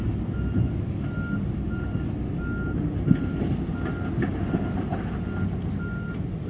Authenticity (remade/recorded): recorded